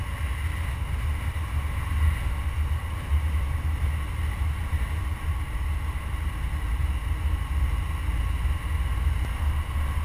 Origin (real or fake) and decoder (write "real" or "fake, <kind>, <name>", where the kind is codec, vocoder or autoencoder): real